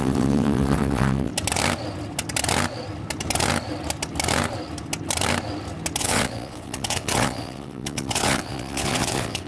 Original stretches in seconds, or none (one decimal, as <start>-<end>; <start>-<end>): 1.3-6.0